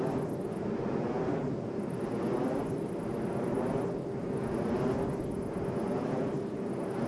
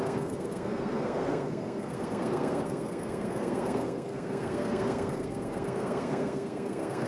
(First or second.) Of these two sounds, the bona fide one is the first